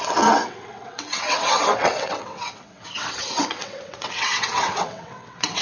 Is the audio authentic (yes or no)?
no